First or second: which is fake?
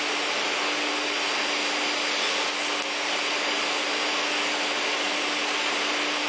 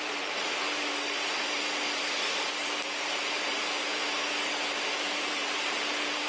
second